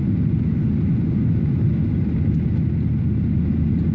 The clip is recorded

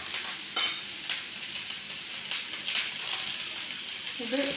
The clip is recorded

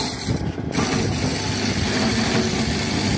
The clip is recorded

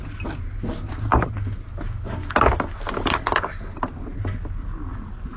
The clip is recorded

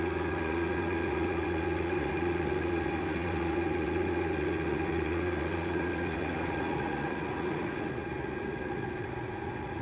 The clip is remade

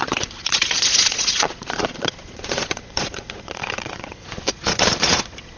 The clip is remade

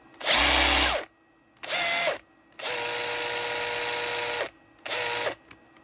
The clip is recorded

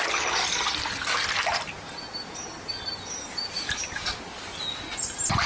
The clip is recorded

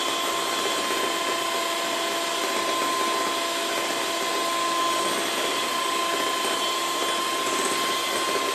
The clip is recorded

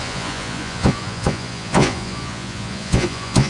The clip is remade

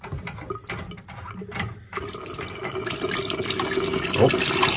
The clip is recorded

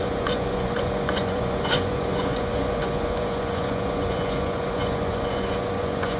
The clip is remade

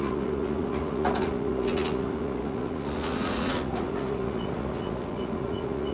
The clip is remade